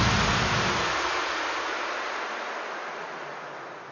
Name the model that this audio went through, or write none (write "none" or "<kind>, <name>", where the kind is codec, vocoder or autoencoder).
none